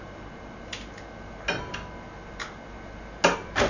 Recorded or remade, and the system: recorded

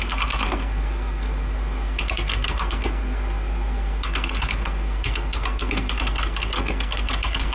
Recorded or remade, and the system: remade, codec, SNAC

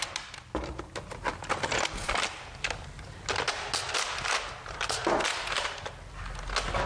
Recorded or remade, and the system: recorded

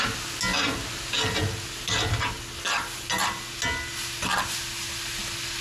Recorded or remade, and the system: recorded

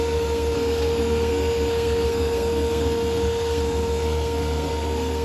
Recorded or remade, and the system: remade, codec, SNAC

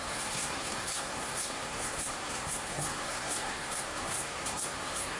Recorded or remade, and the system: remade, codec, SNAC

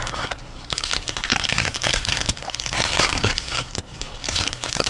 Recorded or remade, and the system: remade, codec, SNAC